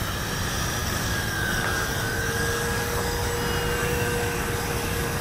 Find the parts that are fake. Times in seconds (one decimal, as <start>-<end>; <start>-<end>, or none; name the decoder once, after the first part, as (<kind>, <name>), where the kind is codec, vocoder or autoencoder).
0.8-3.3 (codec, DAC); 3.8-5.2